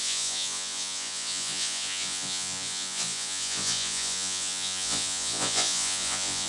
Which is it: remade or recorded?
remade